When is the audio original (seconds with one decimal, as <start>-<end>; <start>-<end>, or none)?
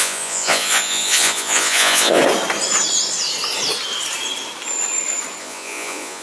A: 2.2-5.4